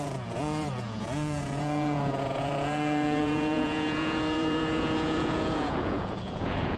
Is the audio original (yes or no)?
no